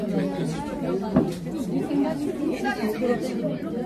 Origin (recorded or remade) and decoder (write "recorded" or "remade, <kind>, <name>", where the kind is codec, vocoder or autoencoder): recorded